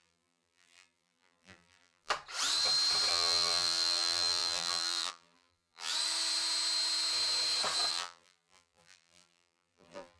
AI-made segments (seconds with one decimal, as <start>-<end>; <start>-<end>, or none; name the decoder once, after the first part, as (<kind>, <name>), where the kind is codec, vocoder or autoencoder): 0.0-2.1 (vocoder, BigVGAN v2); 3.1-5.9; 7.9-10.2